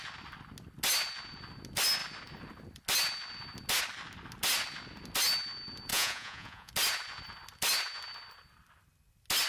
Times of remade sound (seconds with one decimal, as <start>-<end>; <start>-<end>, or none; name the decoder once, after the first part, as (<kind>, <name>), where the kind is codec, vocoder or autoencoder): 5.9-6.7 (vocoder, Vocos)